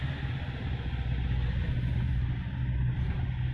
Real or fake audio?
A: real